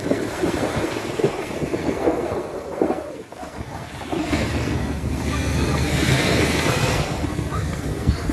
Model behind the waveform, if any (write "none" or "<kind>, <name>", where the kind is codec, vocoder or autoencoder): codec, SNAC